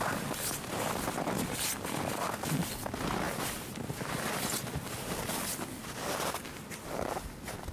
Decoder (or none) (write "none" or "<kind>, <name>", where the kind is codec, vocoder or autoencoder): none